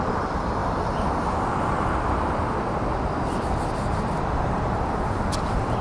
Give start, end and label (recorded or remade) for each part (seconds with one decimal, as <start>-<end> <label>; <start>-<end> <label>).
0.0-5.8 recorded